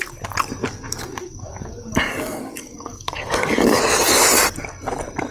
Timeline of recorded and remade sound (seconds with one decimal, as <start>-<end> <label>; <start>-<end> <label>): 0.0-0.6 recorded; 0.6-3.8 remade; 3.8-5.3 recorded